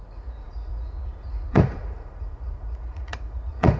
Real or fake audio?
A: fake